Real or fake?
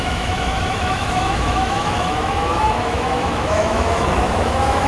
fake